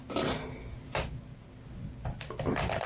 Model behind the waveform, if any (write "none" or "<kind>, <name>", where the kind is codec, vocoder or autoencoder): none